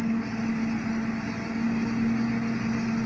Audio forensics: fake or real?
real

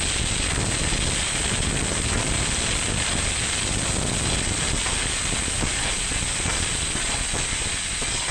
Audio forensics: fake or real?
real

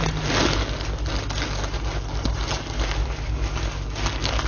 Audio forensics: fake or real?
real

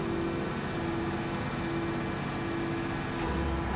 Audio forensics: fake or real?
real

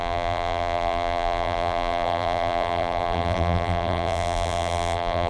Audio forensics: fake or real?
fake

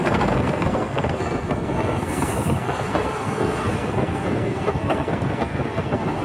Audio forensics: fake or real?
fake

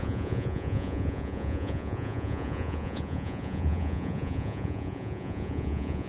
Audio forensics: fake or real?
fake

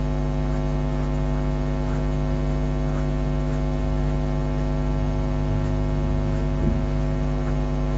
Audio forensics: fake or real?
real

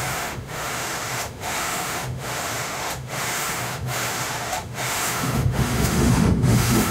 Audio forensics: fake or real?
fake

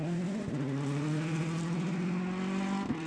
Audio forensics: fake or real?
real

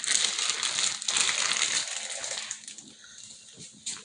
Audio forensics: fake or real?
real